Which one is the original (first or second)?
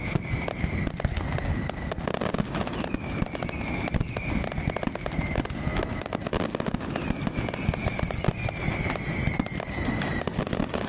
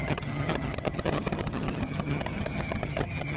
first